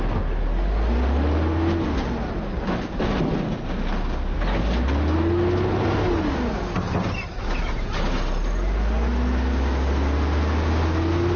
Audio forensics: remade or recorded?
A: recorded